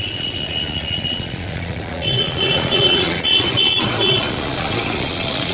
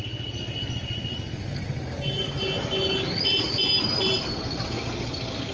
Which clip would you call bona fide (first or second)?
second